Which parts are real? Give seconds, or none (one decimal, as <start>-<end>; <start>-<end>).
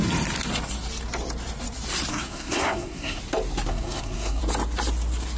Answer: 0.0-2.1; 3.2-3.7; 4.4-5.4